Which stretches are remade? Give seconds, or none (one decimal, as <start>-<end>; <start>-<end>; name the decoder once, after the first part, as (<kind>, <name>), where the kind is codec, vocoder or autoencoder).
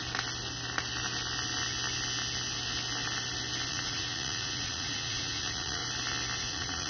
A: 3.7-5.8 (vocoder, Vocos); 6.4-6.9